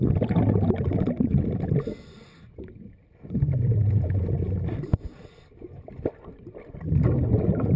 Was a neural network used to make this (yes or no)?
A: no